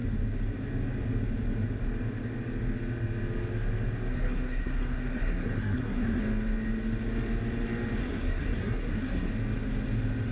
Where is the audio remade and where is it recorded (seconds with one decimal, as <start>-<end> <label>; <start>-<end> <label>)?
0.0-4.1 recorded; 4.1-6.2 remade; 6.2-8.0 recorded; 8.0-9.3 remade; 9.3-10.3 recorded